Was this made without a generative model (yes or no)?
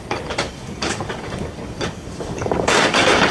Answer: no